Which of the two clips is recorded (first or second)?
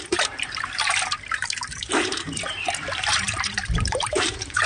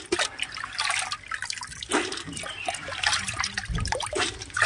second